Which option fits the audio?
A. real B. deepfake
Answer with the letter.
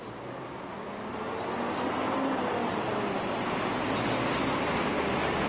A